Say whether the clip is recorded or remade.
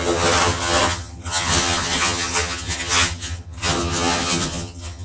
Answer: remade